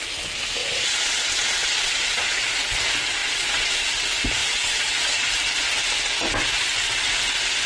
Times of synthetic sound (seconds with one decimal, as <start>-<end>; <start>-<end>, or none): 0.6-2.4; 3.2-3.9; 4.4-5.3